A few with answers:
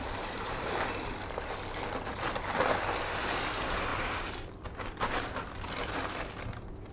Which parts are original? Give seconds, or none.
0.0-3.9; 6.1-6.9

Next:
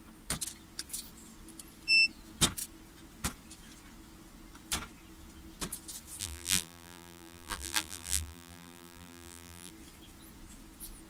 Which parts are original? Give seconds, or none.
0.0-6.2; 9.7-11.1

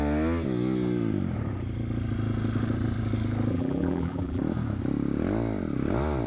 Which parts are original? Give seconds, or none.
0.0-3.5; 4.4-6.3

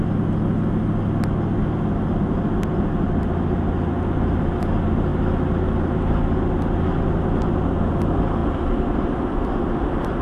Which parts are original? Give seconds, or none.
0.0-8.4

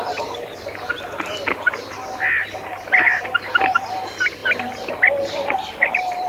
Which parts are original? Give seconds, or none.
0.0-6.3

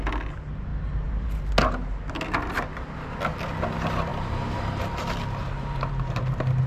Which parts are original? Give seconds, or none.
0.0-0.7; 1.5-4.1; 4.8-5.4; 5.9-6.7

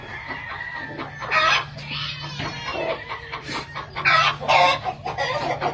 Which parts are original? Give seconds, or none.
0.0-2.7; 4.3-5.7